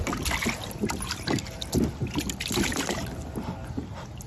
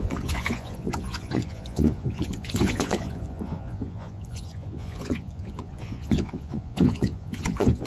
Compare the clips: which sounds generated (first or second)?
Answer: second